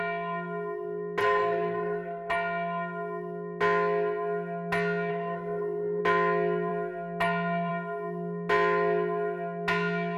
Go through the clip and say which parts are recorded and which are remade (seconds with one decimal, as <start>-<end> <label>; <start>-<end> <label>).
0.0-1.2 recorded; 1.2-2.3 remade; 2.3-5.1 recorded; 5.1-6.0 remade; 6.0-10.2 recorded